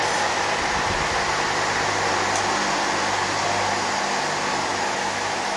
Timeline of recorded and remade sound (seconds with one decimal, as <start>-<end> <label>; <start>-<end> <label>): 0.0-4.7 recorded; 4.7-5.6 remade